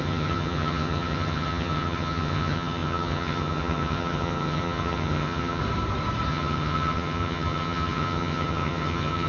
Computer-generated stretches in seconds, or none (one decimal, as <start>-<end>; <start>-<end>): 0.0-5.6; 6.3-9.3